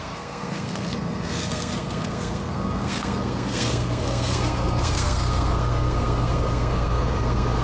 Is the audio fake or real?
fake